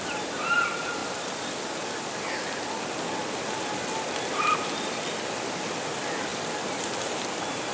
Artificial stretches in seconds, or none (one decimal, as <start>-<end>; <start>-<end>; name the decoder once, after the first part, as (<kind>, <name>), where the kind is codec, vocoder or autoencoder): none